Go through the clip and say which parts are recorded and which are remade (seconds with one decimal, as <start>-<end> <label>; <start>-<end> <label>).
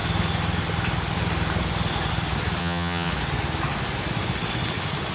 0.0-2.6 recorded; 2.6-3.1 remade; 3.1-5.1 recorded